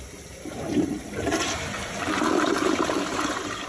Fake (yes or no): yes